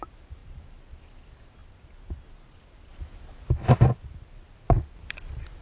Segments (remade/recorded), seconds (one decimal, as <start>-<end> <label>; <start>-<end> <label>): 0.0-0.4 recorded; 0.4-1.0 remade; 1.0-1.6 recorded; 1.6-2.2 remade; 2.2-5.6 recorded